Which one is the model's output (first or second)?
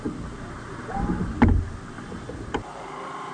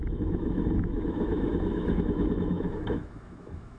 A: second